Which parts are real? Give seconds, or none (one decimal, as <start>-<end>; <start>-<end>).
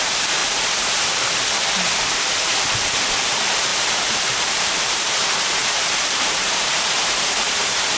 0.4-3.3